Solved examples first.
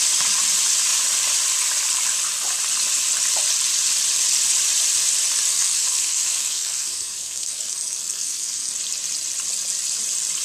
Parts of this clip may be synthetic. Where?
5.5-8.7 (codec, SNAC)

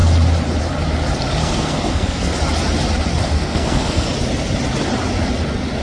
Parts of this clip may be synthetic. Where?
1.4-2.3 (codec, SNAC); 3.2-4.1

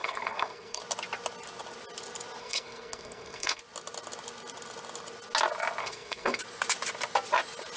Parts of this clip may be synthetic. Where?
0.0-0.8 (codec, SNAC); 2.4-3.6; 5.8-6.4

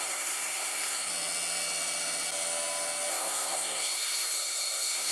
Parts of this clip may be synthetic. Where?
0.0-1.1 (codec, SNAC); 3.1-5.1

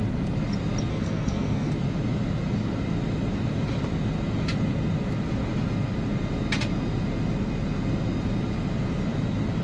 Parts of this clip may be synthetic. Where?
0.9-1.7 (codec, SNAC)

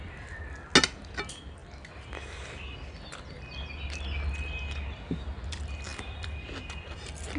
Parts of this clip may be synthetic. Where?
none

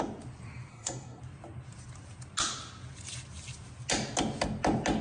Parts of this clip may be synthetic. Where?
0.7-1.2 (codec, SNAC)

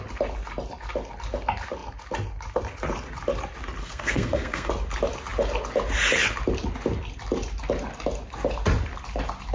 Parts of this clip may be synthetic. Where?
3.8-4.7 (codec, SNAC)